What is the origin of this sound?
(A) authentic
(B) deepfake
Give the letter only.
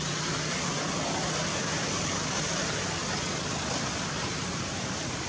B